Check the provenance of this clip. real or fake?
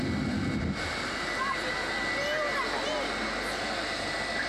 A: real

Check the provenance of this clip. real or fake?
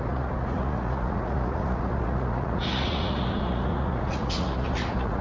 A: fake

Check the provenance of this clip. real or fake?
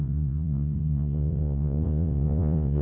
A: fake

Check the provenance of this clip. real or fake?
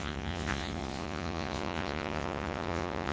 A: fake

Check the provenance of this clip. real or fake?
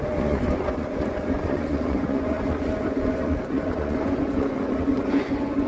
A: fake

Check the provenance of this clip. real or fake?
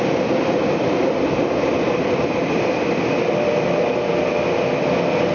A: real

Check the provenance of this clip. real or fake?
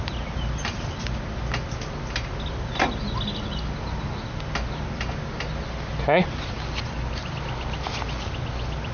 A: real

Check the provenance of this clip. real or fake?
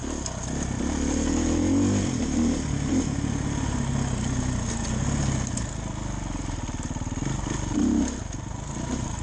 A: real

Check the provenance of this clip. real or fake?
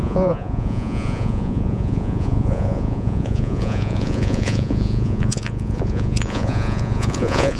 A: fake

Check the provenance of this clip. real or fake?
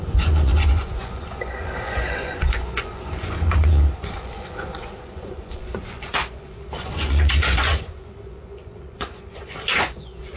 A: fake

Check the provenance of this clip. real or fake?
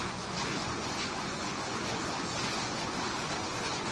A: fake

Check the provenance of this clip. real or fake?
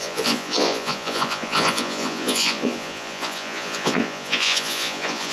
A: fake